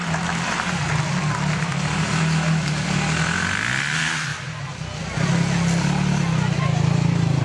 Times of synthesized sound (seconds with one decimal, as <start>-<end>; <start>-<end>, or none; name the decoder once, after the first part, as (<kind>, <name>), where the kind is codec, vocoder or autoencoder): none